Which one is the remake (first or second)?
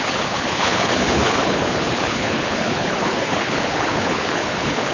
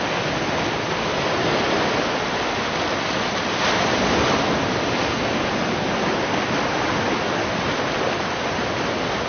first